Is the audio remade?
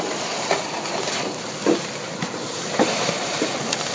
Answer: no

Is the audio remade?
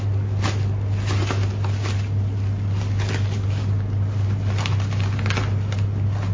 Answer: no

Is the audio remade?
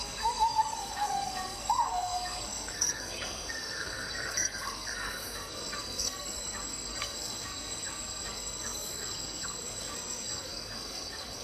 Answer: yes